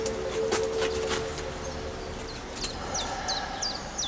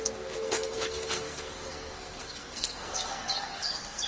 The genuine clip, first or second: first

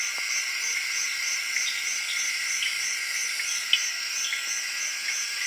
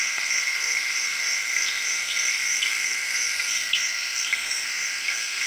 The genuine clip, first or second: first